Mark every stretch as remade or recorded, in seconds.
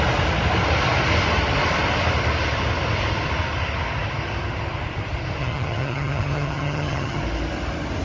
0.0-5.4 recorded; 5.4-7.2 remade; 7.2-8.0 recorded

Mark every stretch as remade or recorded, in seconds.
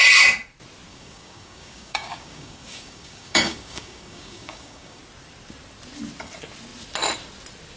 0.0-0.9 recorded; 0.9-5.0 remade; 5.0-7.8 recorded